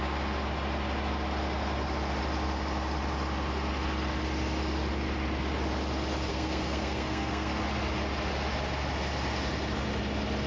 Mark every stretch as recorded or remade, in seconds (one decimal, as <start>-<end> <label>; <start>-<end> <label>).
0.0-6.3 recorded; 6.3-7.6 remade; 7.6-10.5 recorded